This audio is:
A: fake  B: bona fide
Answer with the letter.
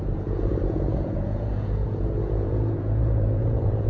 A